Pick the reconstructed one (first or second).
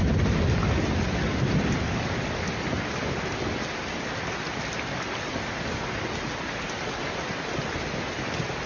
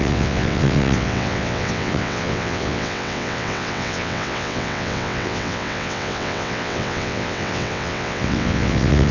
second